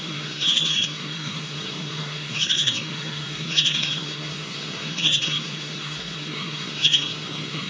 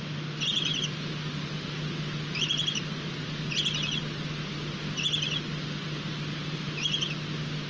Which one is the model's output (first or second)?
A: first